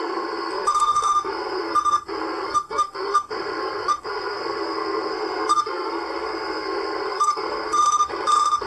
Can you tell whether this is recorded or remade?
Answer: remade